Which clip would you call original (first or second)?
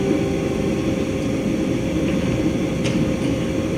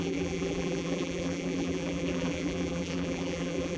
first